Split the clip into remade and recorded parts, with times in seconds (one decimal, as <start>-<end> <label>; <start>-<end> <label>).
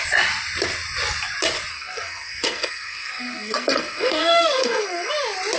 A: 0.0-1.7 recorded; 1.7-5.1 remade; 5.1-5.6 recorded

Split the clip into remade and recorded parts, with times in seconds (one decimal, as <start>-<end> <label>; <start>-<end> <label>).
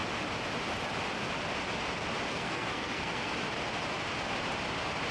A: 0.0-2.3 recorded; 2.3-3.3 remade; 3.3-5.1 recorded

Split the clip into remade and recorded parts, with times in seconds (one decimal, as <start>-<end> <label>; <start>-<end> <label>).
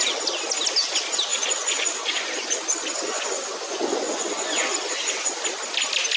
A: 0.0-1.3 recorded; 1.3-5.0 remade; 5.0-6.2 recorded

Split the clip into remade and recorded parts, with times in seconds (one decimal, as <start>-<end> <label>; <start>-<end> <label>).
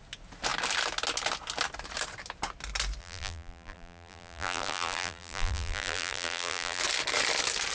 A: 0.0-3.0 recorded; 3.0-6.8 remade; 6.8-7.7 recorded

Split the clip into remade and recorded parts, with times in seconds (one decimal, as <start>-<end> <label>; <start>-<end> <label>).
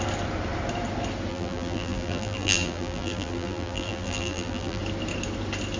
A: 0.0-1.3 recorded; 1.3-4.8 remade; 4.8-5.8 recorded